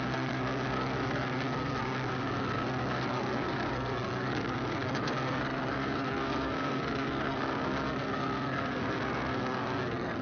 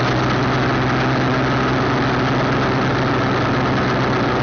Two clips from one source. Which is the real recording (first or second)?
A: second